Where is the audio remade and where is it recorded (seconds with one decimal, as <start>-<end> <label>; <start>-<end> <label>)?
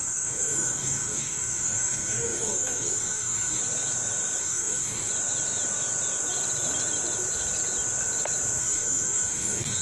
0.0-3.6 remade; 3.6-4.4 recorded; 4.4-5.1 remade; 5.1-8.6 recorded; 8.6-9.8 remade